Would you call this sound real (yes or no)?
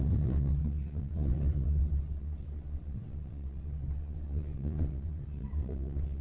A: no